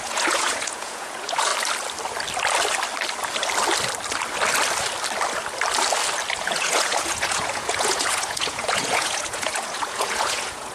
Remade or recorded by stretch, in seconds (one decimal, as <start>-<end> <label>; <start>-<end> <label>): 0.0-1.5 remade; 1.5-6.4 recorded; 6.4-10.7 remade

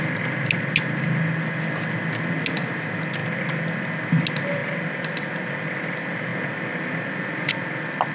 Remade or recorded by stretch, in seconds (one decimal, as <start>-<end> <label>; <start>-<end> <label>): 0.0-8.1 recorded

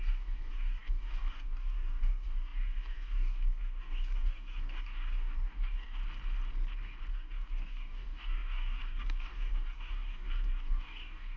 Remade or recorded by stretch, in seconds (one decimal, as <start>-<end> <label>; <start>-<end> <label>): 0.0-6.0 remade; 6.0-7.1 recorded; 7.1-11.4 remade

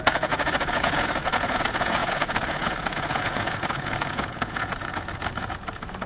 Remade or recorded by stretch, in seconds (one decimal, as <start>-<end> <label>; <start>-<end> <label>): 0.0-6.1 remade

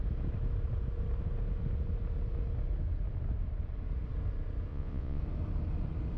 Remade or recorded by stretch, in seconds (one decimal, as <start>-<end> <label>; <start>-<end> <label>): 0.0-4.7 recorded; 4.7-5.2 remade; 5.2-6.2 recorded